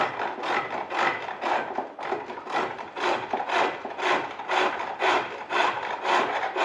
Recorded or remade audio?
recorded